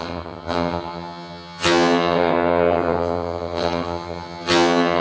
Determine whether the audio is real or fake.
fake